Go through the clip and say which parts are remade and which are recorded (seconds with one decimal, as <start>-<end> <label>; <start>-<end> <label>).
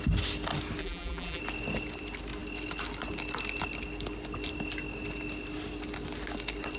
0.0-0.8 recorded; 0.8-1.4 remade; 1.4-6.8 recorded